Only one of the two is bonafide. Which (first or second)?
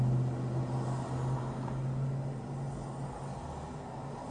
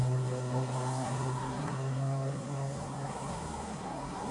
first